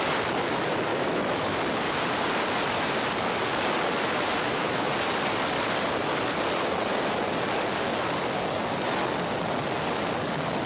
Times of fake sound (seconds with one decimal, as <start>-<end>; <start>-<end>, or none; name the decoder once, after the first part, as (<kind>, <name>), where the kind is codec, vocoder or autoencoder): 0.9-1.6 (autoencoder, DAC-VAE); 4.4-4.9